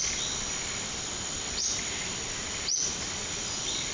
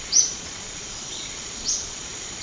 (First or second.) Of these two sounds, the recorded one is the first